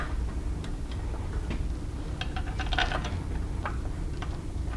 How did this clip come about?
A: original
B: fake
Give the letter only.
A